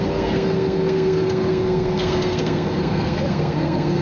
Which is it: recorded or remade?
remade